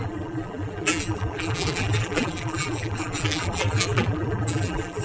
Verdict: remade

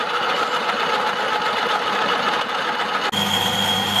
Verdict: recorded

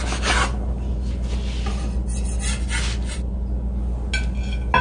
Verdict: recorded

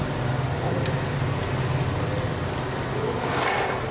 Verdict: recorded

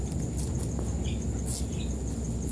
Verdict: recorded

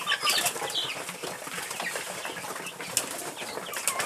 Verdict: recorded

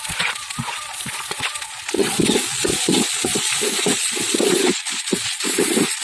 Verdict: remade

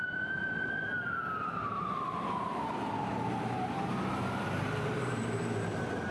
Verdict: remade